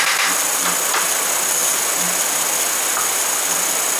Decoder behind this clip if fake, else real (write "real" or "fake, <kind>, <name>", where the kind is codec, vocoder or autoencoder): real